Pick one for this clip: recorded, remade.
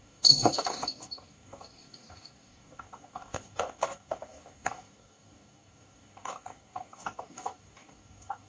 remade